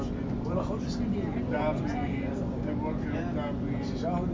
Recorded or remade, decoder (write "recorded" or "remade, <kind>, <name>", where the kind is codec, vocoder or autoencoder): recorded